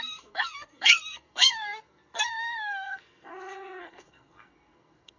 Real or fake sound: fake